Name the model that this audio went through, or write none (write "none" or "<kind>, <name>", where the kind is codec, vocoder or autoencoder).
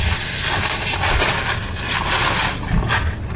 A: none